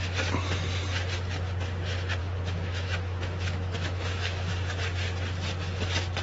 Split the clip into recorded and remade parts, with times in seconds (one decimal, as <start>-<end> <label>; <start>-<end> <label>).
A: 0.0-2.2 recorded; 2.2-4.5 remade; 4.5-6.2 recorded